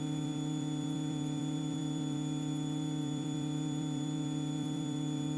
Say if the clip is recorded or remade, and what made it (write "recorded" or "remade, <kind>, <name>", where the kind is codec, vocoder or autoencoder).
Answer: remade, vocoder, BigVGAN v2